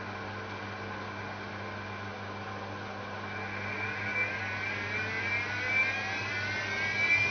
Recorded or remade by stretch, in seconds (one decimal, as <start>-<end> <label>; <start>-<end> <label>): 0.0-7.3 recorded